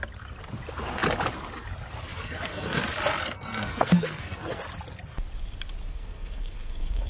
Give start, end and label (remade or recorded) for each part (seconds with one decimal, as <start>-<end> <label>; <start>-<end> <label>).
0.0-2.1 recorded; 2.1-2.8 remade; 2.8-3.2 recorded; 3.2-4.6 remade; 4.6-5.9 recorded; 5.9-7.1 remade